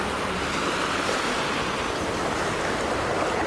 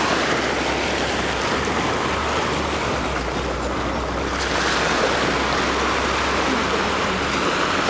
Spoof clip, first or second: first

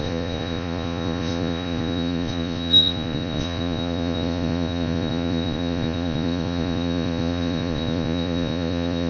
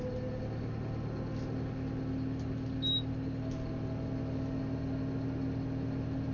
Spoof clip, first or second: first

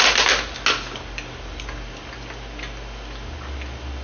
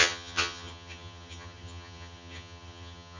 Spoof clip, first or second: second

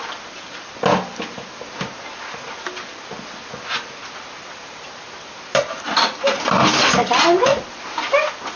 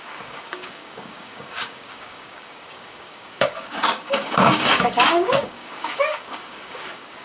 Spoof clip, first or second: second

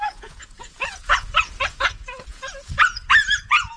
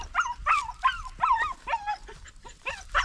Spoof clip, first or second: first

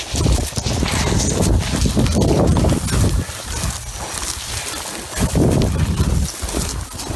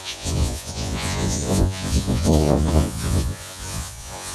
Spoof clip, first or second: second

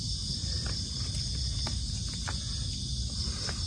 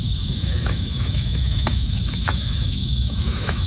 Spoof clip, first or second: second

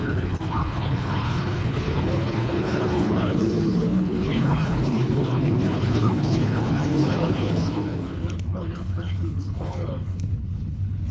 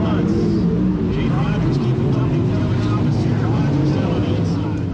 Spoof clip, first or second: first